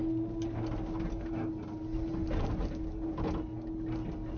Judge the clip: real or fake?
real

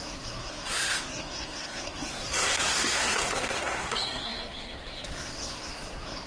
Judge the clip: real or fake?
fake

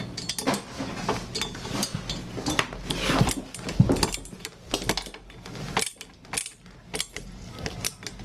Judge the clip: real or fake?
real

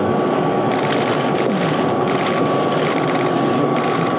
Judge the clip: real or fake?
real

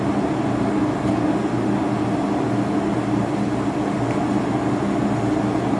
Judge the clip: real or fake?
real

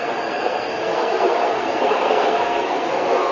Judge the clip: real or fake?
fake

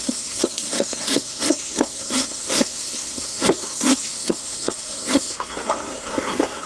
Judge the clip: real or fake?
fake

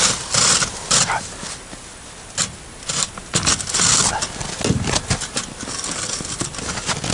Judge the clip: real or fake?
real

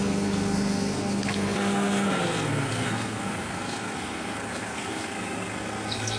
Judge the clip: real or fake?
fake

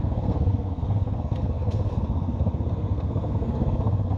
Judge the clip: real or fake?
fake